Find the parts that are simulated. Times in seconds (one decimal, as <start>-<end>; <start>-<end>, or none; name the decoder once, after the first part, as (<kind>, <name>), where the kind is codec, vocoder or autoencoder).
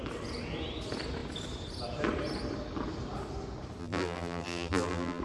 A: 3.8-5.2 (vocoder, BigVGAN v2)